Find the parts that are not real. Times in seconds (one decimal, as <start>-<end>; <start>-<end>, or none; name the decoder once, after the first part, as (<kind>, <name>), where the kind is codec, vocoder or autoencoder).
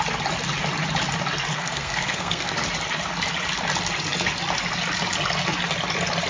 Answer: 1.5-2.5 (codec, SNAC)